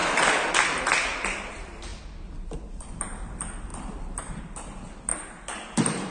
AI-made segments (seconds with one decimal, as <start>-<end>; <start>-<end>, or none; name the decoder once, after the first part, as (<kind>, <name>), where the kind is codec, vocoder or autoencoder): 0.0-1.5 (vocoder, BigVGAN v2); 3.7-4.4; 5.1-6.1